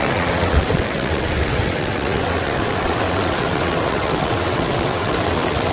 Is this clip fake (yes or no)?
yes